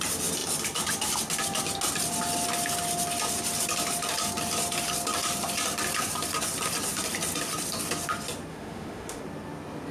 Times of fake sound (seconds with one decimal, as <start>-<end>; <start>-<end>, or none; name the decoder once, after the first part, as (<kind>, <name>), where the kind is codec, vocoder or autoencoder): 8.5-9.2 (autoencoder, DAC-VAE)